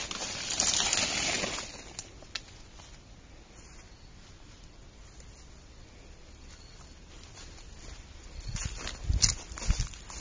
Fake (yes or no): no